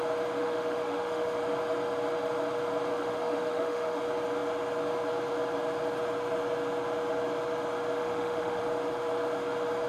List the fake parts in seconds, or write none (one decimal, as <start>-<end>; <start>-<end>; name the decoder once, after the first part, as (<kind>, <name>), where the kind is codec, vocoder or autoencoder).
0.4-1.4 (autoencoder, DAC-VAE); 2.9-4.0; 8.0-8.6